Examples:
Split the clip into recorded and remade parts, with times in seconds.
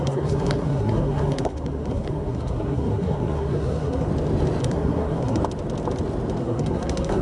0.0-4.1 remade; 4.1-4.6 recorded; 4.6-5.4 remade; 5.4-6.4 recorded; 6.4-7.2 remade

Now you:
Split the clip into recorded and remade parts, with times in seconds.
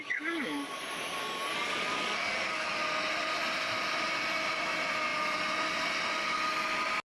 0.0-2.8 remade; 2.8-7.0 recorded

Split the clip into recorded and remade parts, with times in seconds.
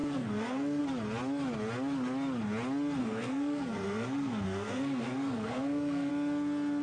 0.0-0.8 remade; 0.8-3.0 recorded; 3.0-6.1 remade; 6.1-6.8 recorded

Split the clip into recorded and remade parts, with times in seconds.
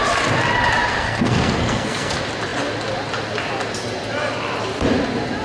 0.0-0.9 recorded; 0.9-2.1 remade; 2.1-5.4 recorded